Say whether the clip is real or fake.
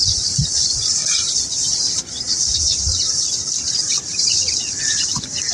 real